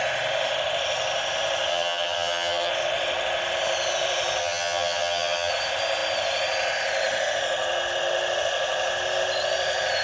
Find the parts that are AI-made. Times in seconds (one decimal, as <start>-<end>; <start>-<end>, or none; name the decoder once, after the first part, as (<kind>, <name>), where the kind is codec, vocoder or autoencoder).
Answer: 1.7-2.7 (vocoder, HiFi-GAN); 4.4-5.5

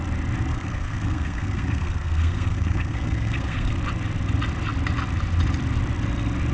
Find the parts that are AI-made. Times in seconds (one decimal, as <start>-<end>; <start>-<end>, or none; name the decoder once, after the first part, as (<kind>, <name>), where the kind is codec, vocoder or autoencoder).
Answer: 0.5-3.7 (codec, SNAC)

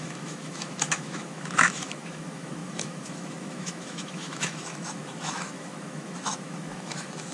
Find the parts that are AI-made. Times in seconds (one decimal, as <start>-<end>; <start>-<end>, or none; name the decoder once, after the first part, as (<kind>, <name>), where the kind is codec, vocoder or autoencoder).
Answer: 0.0-7.3 (autoencoder, DAC-VAE)